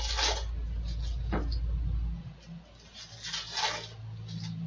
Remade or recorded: recorded